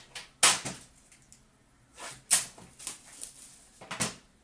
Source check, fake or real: real